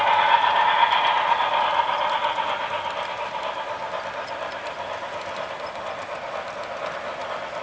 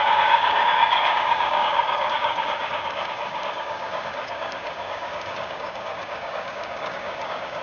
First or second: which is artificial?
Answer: second